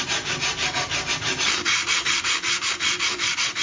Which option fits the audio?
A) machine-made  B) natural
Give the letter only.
A